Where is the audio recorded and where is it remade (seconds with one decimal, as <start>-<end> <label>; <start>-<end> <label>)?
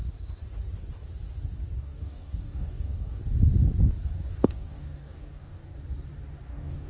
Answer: 0.0-1.8 recorded; 1.8-3.2 remade; 3.2-4.4 recorded; 4.4-5.6 remade; 5.6-6.5 recorded; 6.5-6.9 remade